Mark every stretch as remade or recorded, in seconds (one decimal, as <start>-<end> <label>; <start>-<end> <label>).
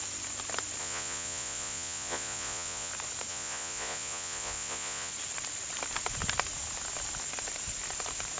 0.0-0.8 recorded; 0.8-2.9 remade; 2.9-3.3 recorded; 3.3-5.1 remade; 5.1-8.4 recorded